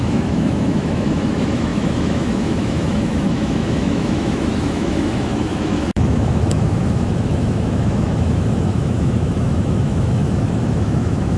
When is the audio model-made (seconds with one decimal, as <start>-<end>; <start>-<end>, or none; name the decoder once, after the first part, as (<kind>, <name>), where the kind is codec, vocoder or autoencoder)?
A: 0.0-11.4 (autoencoder, DAC-VAE)